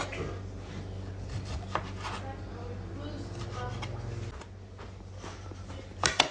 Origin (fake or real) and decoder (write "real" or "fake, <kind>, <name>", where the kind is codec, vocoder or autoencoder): real